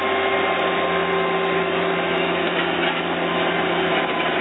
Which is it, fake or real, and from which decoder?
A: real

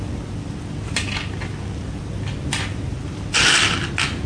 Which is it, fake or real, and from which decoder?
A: real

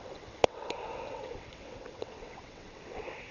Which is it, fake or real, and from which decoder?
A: fake, vocoder, WaveNeXt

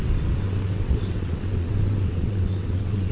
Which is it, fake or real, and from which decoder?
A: fake, vocoder, WaveNeXt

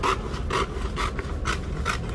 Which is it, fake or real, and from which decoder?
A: real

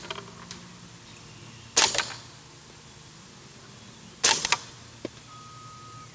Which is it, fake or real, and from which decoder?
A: real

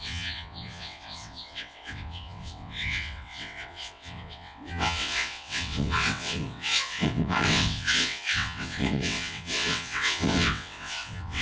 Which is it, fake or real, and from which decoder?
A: fake, vocoder, WaveNeXt